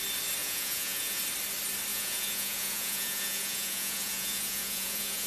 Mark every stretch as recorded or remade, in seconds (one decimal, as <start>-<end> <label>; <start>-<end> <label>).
0.0-0.4 recorded; 0.4-1.2 remade; 1.2-1.9 recorded; 1.9-5.3 remade